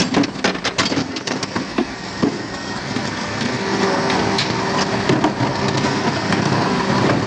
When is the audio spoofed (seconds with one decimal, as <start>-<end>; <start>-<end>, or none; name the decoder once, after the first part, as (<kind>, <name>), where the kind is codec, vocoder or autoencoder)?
1.0-4.6 (codec, SNAC); 5.5-6.8